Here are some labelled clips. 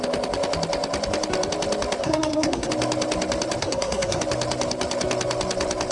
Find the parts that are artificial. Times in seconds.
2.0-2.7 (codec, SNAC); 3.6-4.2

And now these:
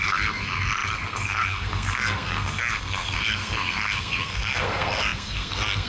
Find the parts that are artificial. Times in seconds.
0.0-5.9 (codec, SNAC)

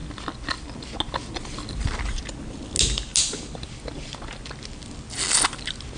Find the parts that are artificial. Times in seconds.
none

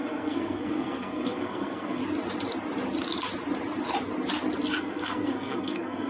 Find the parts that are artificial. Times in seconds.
0.0-2.0 (codec, SNAC); 4.8-6.1

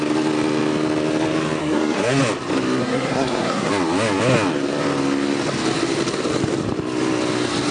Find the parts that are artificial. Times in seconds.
1.6-2.2 (codec, SNAC); 2.8-3.7

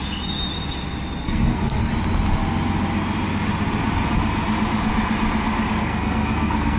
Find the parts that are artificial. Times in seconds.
1.2-1.9 (codec, SNAC); 5.8-6.8